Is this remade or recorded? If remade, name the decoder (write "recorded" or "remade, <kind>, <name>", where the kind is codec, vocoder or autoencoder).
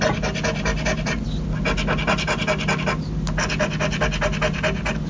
recorded